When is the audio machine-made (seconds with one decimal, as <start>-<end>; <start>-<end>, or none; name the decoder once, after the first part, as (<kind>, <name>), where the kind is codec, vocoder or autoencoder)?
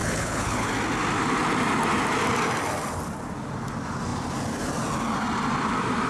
0.0-0.7 (codec, HILCodec)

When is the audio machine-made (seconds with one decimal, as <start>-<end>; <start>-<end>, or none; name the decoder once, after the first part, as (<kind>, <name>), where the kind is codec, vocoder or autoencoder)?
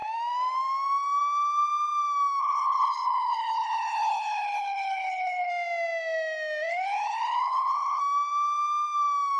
2.4-5.5 (codec, HILCodec); 6.7-8.0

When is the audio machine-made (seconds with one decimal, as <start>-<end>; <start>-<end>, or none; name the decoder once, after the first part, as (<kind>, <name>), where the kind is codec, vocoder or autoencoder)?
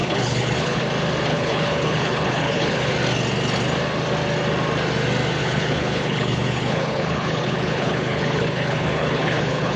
0.0-0.8 (codec, HILCodec); 1.3-2.9; 5.4-9.8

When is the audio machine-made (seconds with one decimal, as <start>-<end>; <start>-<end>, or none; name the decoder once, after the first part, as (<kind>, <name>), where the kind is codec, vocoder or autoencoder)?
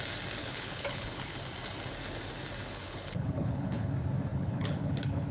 0.4-1.4 (codec, HILCodec); 2.6-3.9; 4.3-5.3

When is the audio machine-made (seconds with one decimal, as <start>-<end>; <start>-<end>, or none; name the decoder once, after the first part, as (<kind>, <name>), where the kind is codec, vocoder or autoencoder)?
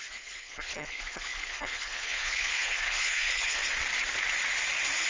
0.0-3.6 (codec, HILCodec)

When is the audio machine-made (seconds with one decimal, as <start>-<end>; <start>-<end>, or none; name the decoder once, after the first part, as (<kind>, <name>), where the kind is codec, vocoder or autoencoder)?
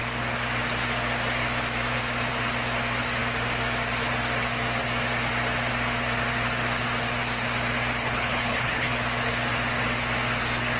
8.0-8.9 (codec, HILCodec)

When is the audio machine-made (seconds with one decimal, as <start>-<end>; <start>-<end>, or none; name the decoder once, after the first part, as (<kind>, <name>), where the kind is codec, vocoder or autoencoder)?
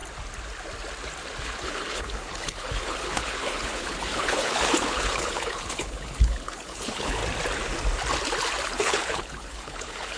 1.4-7.2 (codec, HILCodec); 8.8-10.2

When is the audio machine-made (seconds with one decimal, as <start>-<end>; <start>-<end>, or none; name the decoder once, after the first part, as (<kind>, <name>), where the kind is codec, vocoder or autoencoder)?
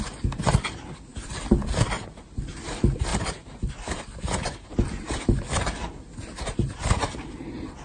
none